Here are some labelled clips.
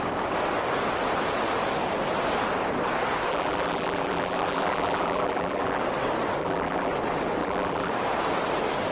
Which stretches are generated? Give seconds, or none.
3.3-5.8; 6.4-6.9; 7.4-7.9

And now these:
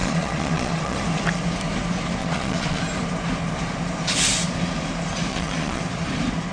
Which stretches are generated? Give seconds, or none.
0.0-1.0; 2.2-2.8; 5.3-5.8

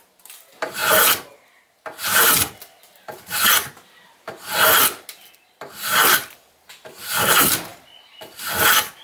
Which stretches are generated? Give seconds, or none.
none

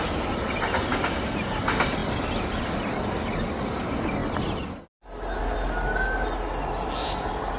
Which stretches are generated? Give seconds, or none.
none

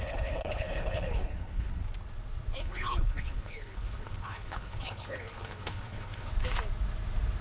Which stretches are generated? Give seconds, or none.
0.0-1.7; 2.6-6.3

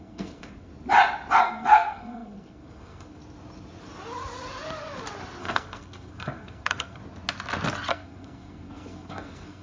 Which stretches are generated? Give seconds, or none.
0.0-0.7; 1.4-3.2; 5.4-7.0; 7.9-9.6

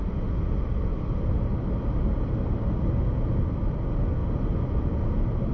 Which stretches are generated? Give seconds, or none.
none

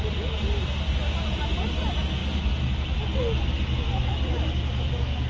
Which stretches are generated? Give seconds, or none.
none